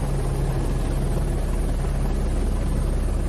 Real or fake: real